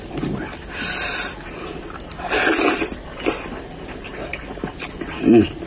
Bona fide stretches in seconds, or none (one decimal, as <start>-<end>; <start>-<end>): 0.0-5.7